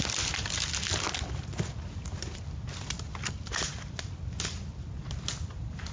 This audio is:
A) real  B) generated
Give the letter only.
A